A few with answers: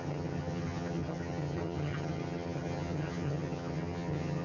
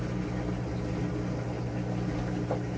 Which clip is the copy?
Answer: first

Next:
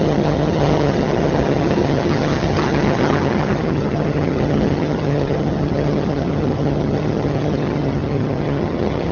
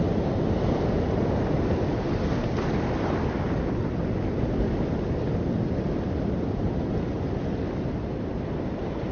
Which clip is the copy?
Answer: first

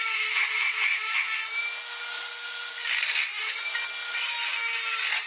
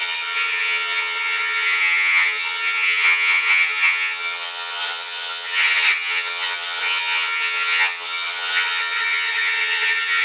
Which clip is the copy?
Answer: second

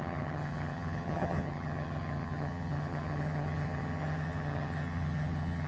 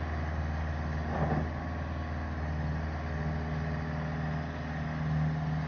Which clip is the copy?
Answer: first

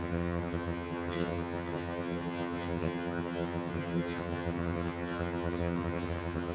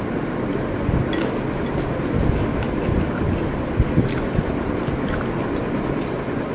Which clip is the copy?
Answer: first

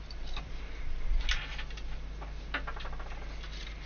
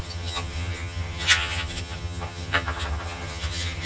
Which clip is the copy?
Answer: second